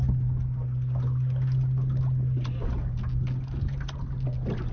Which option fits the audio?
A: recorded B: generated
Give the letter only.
A